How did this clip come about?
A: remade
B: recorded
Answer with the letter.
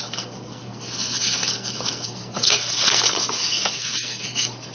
A